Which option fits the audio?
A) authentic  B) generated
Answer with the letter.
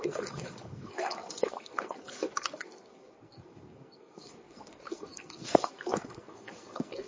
B